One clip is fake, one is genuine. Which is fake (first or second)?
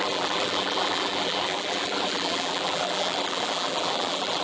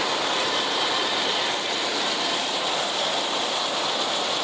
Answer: first